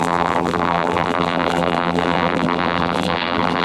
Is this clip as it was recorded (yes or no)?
no